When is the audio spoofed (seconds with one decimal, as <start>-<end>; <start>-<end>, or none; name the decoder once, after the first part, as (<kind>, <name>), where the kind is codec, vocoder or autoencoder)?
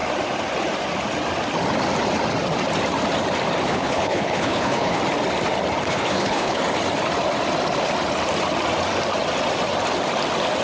3.7-5.0 (codec, HILCodec); 5.9-6.6